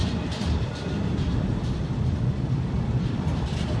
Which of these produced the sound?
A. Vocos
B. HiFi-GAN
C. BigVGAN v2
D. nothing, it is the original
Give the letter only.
C